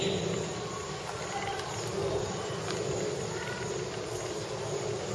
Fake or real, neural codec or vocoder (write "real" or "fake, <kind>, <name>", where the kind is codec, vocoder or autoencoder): real